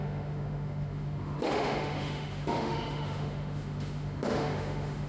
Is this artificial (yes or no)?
yes